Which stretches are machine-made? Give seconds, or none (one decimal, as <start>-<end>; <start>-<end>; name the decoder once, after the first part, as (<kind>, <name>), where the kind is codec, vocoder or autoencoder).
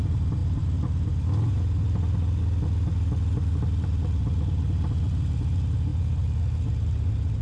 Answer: none